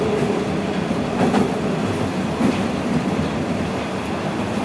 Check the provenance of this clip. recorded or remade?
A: recorded